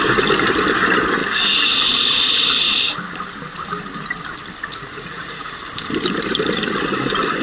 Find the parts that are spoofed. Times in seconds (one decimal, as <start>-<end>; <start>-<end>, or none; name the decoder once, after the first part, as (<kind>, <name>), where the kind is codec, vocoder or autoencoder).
4.7-5.5 (vocoder, Vocos)